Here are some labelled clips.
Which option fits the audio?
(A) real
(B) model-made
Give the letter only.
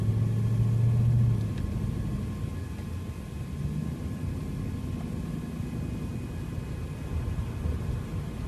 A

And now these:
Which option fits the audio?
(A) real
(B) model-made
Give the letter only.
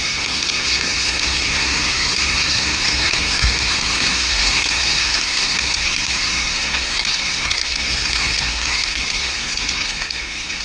B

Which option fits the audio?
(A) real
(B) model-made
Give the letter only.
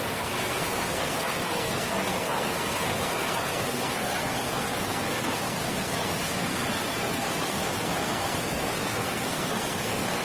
B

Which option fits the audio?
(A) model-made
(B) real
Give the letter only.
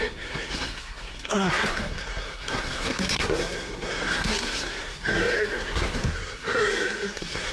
A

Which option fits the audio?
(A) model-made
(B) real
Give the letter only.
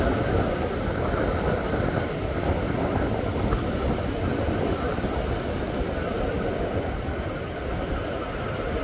B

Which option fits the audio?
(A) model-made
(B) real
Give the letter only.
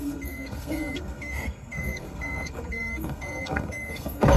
A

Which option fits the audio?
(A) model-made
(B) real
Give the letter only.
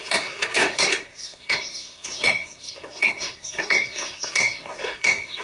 A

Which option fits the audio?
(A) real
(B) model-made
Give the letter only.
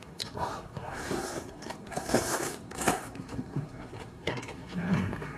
B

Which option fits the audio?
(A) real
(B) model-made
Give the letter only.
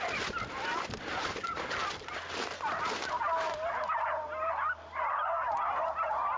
A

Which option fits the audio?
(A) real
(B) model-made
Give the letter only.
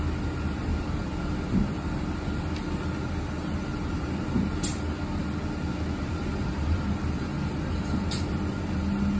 A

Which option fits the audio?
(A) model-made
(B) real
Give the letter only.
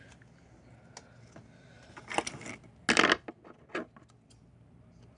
B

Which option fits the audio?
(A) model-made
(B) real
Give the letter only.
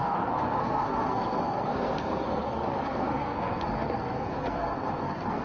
A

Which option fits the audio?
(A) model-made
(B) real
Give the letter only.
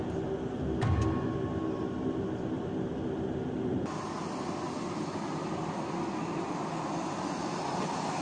B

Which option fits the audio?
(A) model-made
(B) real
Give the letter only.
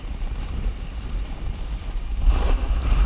B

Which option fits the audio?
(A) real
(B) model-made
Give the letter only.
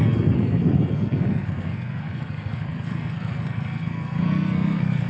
B